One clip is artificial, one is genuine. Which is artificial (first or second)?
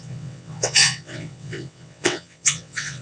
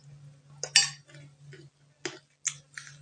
first